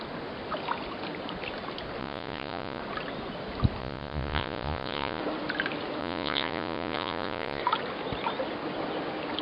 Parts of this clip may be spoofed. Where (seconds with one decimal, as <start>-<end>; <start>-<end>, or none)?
2.0-2.8; 3.8-5.2; 6.0-7.6